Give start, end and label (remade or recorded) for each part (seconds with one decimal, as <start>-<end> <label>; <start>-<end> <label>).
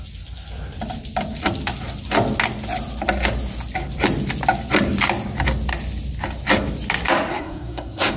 0.0-7.3 recorded; 7.3-8.2 remade